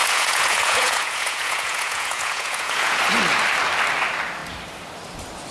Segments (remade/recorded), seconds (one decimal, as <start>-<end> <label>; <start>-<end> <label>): 0.0-3.0 remade; 3.0-5.5 recorded